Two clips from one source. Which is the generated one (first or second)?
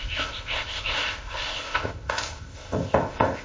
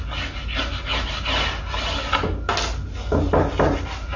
first